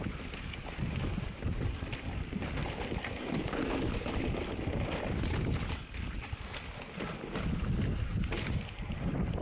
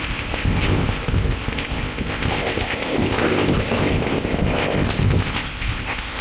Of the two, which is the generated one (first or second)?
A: second